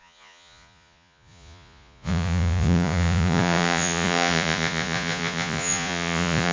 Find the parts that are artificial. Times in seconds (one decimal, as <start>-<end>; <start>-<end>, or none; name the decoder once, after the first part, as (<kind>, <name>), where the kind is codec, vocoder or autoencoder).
0.0-6.5 (vocoder, Vocos)